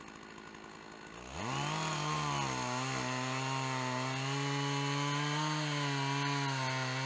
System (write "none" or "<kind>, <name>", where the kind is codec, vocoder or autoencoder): none